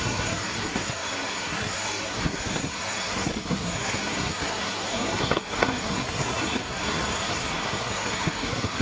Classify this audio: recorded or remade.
remade